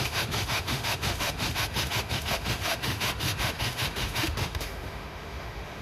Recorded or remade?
remade